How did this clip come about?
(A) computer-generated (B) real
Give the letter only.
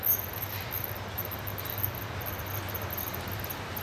B